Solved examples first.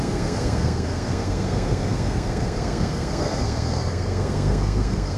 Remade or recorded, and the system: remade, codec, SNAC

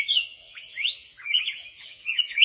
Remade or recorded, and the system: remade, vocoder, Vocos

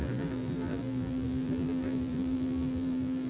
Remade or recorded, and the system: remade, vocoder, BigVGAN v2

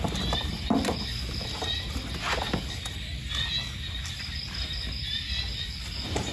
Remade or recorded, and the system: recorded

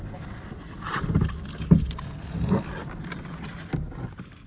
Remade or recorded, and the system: recorded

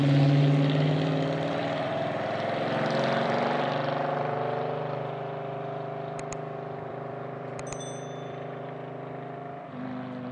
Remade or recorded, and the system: remade, vocoder, BigVGAN v2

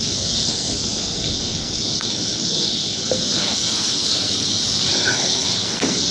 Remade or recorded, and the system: remade, codec, SNAC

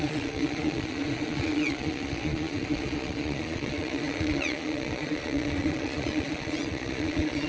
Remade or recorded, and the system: remade, vocoder, Vocos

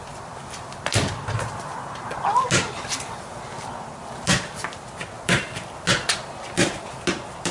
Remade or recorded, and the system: recorded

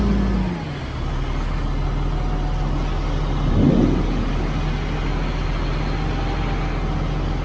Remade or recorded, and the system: recorded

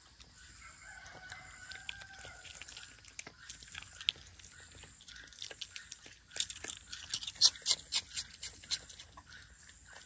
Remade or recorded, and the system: recorded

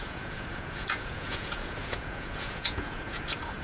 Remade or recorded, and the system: remade, vocoder, Vocos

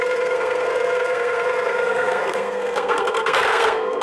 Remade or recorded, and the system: remade, codec, SNAC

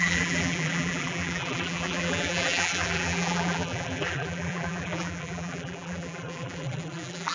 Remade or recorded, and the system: remade, vocoder, BigVGAN v2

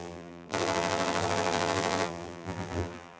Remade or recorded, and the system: remade, vocoder, BigVGAN v2